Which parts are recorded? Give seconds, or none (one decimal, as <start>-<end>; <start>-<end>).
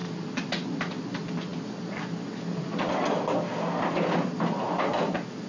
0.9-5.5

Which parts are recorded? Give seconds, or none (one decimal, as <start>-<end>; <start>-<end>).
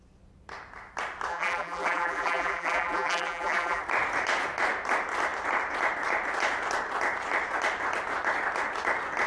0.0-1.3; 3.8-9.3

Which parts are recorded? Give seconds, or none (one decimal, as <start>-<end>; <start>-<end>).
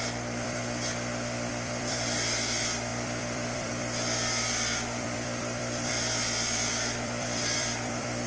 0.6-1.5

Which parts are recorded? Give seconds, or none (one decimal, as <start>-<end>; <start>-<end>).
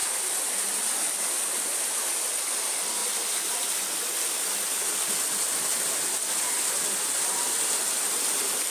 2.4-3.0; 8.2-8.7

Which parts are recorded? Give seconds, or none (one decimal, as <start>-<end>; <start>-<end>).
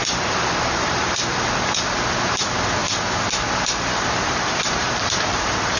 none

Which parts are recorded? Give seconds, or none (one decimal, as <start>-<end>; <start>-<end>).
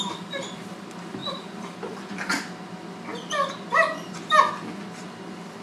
0.0-5.6